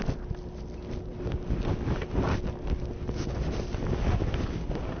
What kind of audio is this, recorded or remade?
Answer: recorded